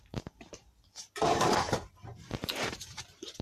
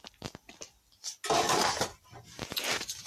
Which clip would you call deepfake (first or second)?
first